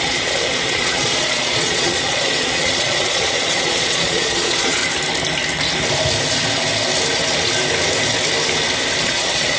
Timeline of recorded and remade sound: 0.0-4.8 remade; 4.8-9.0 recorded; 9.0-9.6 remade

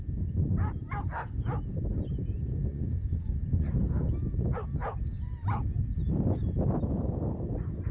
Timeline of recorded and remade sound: 0.0-2.7 recorded; 2.7-3.7 remade; 3.7-7.9 recorded

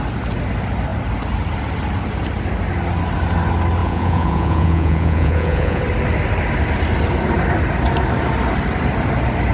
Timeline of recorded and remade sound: 0.0-3.8 recorded; 3.8-5.8 remade; 5.8-9.5 recorded

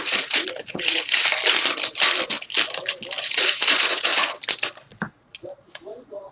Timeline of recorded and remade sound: 0.0-1.2 remade; 1.2-3.2 recorded; 3.2-4.1 remade; 4.1-5.1 recorded; 5.1-6.3 remade

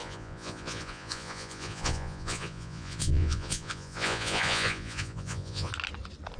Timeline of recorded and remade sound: 0.0-5.7 remade; 5.7-6.4 recorded